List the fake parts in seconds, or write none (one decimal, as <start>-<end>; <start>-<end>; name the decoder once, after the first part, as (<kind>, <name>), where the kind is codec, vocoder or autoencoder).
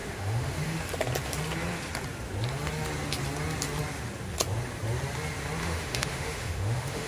0.0-0.8 (autoencoder, DAC-VAE); 5.6-7.1